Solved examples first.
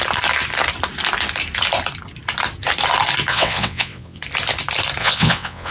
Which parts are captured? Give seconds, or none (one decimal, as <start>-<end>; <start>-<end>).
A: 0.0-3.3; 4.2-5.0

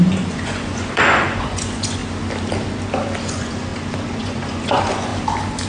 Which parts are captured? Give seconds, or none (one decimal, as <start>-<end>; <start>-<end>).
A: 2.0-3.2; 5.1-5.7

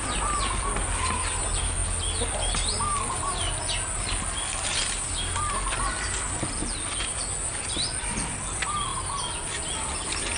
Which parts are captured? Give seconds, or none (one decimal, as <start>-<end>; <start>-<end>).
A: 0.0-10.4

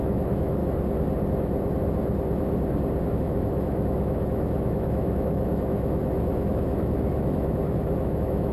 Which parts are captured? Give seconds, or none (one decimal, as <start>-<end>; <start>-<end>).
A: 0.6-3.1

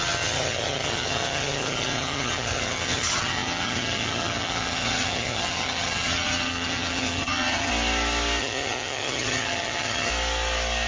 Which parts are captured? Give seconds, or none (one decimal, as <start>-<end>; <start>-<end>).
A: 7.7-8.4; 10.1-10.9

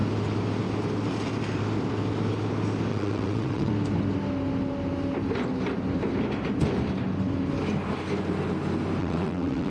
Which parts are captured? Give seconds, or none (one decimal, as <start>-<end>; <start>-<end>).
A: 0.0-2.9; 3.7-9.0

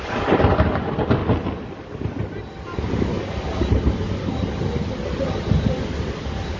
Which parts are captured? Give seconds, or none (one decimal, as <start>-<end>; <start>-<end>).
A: 0.0-6.6

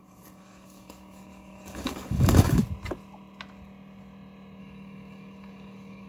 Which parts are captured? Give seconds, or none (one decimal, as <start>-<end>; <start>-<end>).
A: 2.6-4.6